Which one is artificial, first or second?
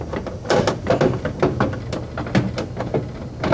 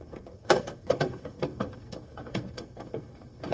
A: second